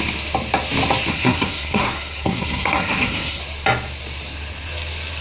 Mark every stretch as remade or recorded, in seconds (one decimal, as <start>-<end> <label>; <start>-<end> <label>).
0.0-1.1 recorded; 1.1-3.4 remade; 3.4-5.2 recorded